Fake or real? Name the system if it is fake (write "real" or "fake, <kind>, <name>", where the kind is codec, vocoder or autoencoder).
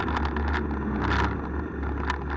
real